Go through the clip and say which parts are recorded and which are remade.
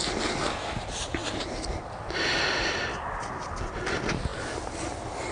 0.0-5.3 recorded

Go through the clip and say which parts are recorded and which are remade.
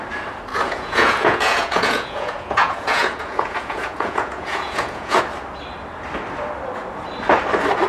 0.0-0.5 recorded; 0.5-5.2 remade; 5.2-7.9 recorded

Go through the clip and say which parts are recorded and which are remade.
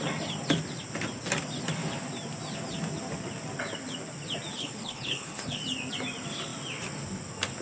0.0-4.6 recorded; 4.6-5.6 remade; 5.6-7.6 recorded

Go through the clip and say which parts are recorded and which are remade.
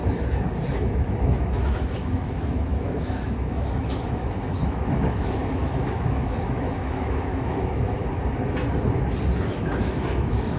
0.0-0.7 recorded; 0.7-8.0 remade; 8.0-9.5 recorded; 9.5-10.6 remade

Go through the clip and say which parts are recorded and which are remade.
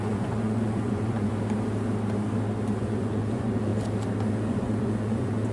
0.0-1.3 remade; 1.3-2.8 recorded; 2.8-3.7 remade; 3.7-4.3 recorded; 4.3-5.5 remade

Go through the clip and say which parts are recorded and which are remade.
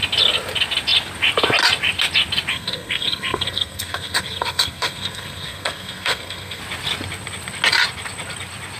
0.0-2.5 recorded; 2.5-6.6 remade; 6.6-8.8 recorded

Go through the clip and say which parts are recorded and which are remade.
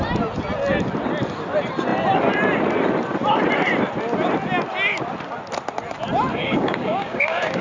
0.0-6.3 recorded; 6.3-7.6 remade